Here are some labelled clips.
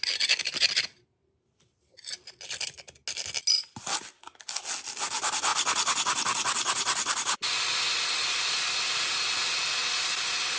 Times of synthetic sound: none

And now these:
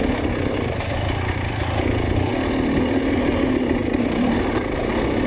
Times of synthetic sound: none